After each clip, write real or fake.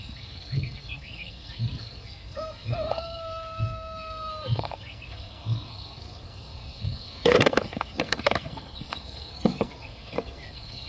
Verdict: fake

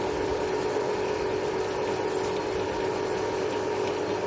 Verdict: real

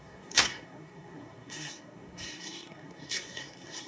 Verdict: fake